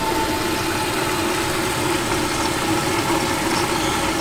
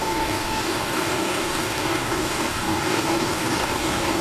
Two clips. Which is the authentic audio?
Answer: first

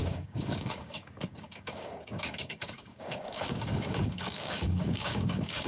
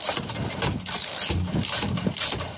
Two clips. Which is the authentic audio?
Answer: second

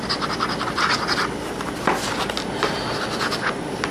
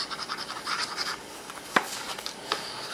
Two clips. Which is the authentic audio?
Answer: first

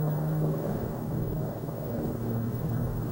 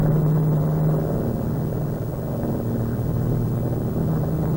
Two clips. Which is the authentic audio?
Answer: second